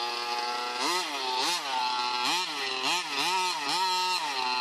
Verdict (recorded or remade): recorded